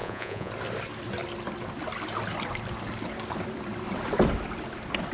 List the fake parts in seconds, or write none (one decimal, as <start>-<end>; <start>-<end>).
0.0-0.5